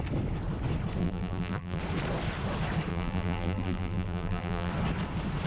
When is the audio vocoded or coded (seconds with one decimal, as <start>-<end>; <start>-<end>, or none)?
1.0-1.8; 2.9-4.7